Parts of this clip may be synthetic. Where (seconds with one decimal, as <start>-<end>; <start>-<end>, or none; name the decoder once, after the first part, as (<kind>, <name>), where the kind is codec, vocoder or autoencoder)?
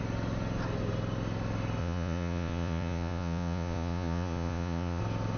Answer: 1.8-5.0 (vocoder, Vocos)